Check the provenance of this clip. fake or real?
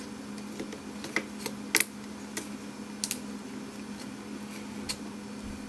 real